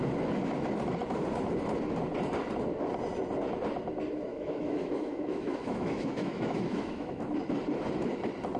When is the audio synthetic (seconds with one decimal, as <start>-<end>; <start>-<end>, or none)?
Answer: 4.3-7.2